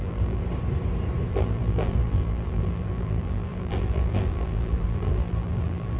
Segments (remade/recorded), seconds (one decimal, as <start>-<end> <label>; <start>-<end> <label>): 0.0-0.4 remade; 0.4-1.3 recorded; 1.3-6.0 remade